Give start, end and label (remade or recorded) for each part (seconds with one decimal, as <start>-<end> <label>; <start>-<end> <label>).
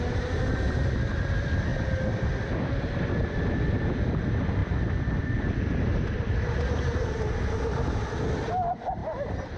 0.0-9.6 recorded